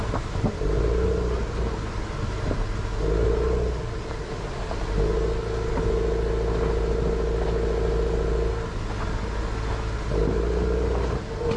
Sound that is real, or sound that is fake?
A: real